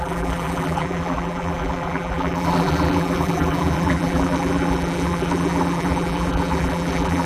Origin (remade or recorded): remade